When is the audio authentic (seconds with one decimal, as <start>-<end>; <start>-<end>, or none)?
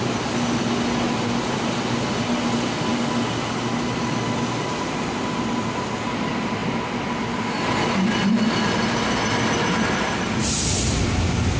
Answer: 0.0-11.6